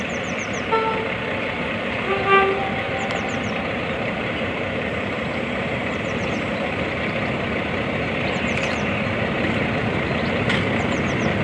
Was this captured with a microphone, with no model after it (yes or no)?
no